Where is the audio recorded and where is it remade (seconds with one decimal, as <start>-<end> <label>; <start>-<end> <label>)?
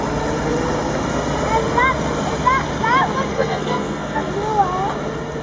0.0-3.3 recorded; 3.3-4.3 remade; 4.3-5.4 recorded